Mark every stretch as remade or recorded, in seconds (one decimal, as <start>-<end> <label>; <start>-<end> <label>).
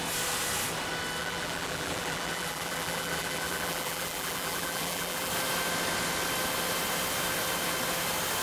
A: 0.0-1.2 recorded; 1.2-5.3 remade; 5.3-8.4 recorded